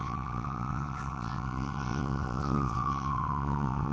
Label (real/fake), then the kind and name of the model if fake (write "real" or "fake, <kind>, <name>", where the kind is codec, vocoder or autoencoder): fake, vocoder, WaveNeXt